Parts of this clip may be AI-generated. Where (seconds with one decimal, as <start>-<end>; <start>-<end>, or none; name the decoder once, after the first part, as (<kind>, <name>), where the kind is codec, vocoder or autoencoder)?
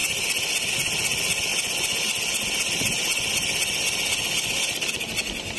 none